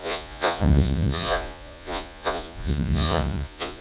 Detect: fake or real fake